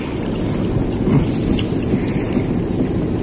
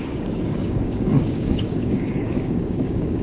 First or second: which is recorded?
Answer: first